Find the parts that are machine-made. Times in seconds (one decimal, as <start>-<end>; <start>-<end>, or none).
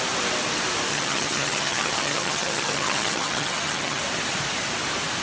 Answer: 0.9-4.0